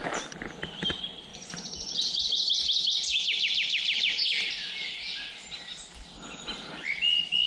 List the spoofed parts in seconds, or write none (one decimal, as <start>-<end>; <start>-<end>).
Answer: 1.3-2.3